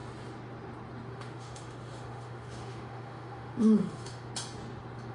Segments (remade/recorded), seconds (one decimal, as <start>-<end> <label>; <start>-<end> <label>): 0.0-1.1 recorded; 1.1-4.3 remade; 4.3-5.1 recorded